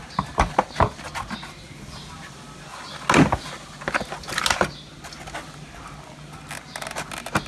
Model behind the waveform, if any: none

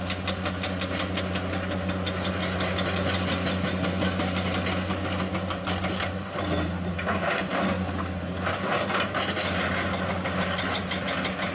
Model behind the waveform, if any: none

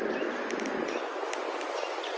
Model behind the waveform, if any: none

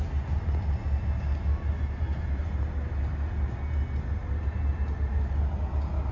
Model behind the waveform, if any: none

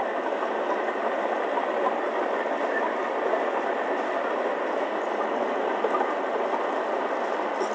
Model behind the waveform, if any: none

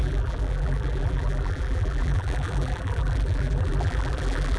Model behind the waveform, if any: vocoder, BigVGAN v2